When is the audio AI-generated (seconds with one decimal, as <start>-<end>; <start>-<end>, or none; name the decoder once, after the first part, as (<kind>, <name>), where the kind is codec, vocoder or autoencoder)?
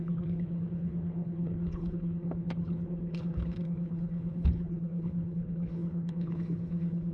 0.0-7.1 (codec, HILCodec)